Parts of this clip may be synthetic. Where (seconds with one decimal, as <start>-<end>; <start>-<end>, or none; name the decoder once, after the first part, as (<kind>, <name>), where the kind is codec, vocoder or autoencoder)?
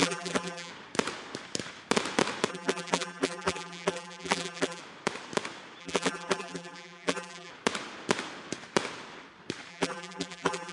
0.0-0.7 (vocoder, BigVGAN v2); 2.5-4.8; 5.8-7.5; 9.7-10.7